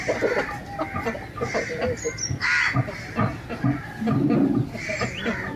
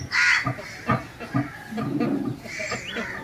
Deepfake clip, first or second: first